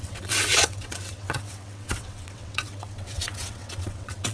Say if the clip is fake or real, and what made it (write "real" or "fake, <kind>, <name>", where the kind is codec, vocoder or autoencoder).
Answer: fake, vocoder, WaveNeXt